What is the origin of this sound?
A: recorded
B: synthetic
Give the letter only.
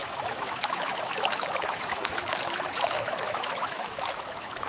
B